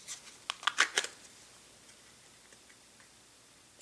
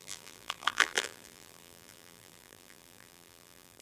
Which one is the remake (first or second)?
second